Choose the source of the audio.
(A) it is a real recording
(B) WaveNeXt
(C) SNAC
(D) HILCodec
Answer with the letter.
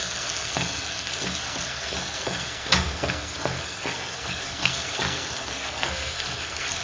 C